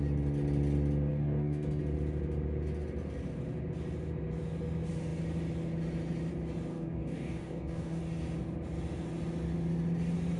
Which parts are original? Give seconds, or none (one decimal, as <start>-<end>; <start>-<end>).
0.0-1.1; 1.8-6.7; 8.0-10.4